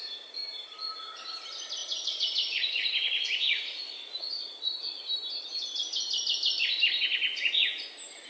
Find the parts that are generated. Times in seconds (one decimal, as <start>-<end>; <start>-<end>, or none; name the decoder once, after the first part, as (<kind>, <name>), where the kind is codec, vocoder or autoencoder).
1.8-5.0 (vocoder, Vocos); 7.3-7.9